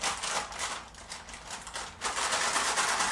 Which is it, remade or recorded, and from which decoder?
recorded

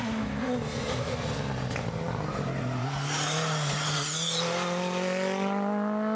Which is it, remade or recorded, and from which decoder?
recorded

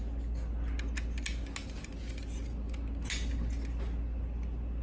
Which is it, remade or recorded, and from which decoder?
recorded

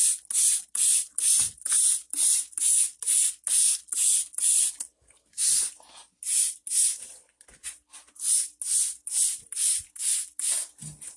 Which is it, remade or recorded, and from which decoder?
recorded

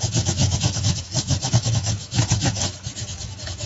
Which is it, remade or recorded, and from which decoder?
remade, autoencoder, DAC-VAE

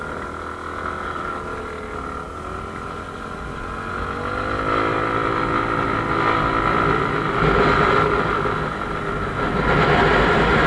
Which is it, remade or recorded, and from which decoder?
recorded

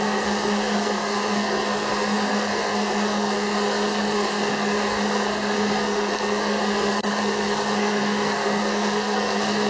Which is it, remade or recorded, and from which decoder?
remade, codec, SNAC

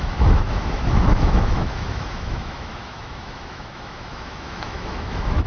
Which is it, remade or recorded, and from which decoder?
remade, autoencoder, DAC-VAE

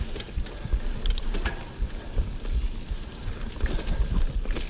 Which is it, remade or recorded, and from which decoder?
recorded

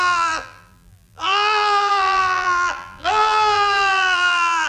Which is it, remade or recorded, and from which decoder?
remade, vocoder, BigVGAN v2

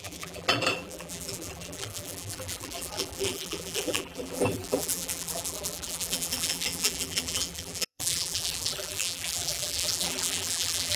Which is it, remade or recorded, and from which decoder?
remade, vocoder, BigVGAN v2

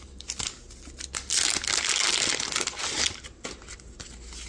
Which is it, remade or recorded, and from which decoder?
recorded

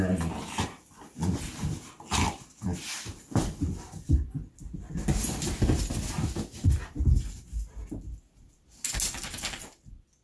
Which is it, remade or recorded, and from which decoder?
recorded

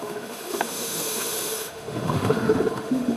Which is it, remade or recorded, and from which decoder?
remade, autoencoder, DAC-VAE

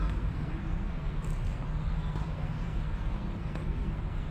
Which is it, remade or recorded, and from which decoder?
remade, codec, SNAC